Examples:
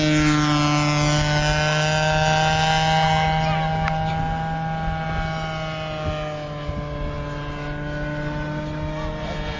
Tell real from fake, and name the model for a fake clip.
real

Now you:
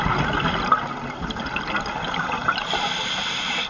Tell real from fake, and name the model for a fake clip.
real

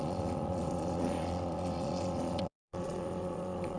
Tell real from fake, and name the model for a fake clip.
fake, vocoder, Vocos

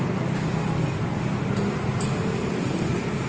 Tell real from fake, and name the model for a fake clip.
real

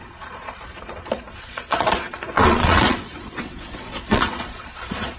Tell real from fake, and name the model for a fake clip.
fake, vocoder, Vocos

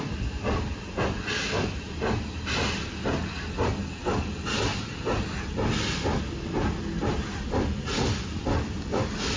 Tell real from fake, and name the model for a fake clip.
real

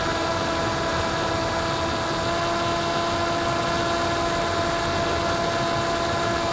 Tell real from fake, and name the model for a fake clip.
real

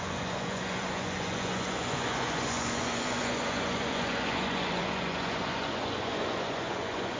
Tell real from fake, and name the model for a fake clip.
fake, vocoder, Vocos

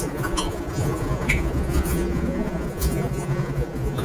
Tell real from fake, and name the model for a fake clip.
fake, vocoder, Vocos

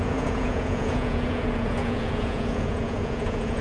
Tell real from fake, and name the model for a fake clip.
fake, vocoder, Vocos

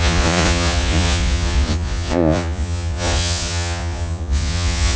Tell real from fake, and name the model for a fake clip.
fake, vocoder, Vocos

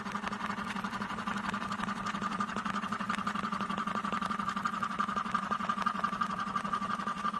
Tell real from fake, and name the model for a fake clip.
real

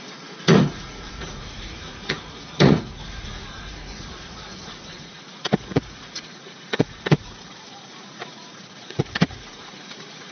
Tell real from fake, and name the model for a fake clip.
fake, vocoder, Vocos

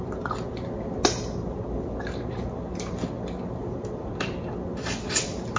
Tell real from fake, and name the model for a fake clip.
real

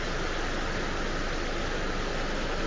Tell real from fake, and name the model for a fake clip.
real